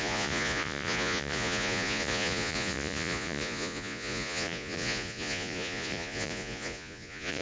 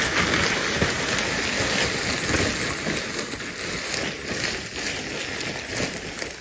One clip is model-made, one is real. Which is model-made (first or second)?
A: first